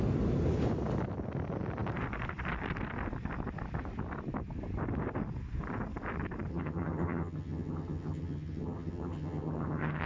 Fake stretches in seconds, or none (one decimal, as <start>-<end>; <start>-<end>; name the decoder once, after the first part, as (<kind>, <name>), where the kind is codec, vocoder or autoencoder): 6.5-10.1 (vocoder, HiFi-GAN)